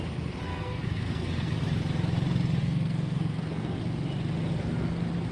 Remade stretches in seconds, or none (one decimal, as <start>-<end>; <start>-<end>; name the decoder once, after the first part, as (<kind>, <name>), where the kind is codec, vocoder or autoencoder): 0.5-1.6 (codec, SNAC); 2.6-3.8

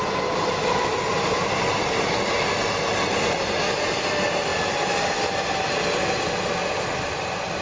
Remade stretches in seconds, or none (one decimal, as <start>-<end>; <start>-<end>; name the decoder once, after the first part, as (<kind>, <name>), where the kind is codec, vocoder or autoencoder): none

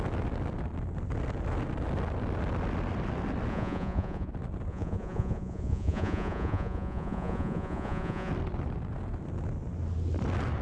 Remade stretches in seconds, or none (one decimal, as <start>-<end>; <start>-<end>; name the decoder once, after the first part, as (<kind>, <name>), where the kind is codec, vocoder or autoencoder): 3.5-4.3 (vocoder, Vocos); 4.7-8.3

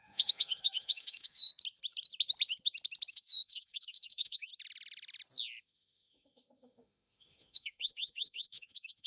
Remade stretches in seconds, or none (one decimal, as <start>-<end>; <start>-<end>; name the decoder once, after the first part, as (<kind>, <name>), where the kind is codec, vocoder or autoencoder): 0.0-1.5 (autoencoder, DAC-VAE); 3.1-4.5; 5.6-9.1